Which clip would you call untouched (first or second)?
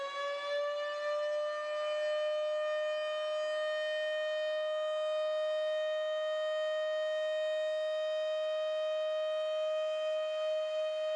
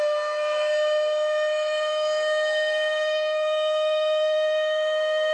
first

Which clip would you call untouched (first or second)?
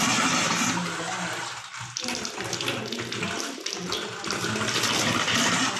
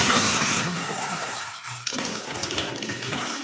first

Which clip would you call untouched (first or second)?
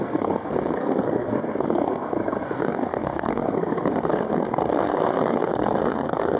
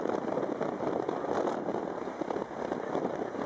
second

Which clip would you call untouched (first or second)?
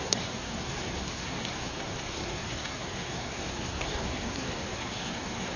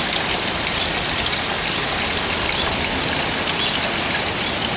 second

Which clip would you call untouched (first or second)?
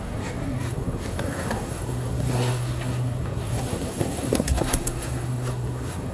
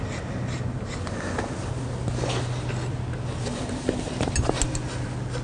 second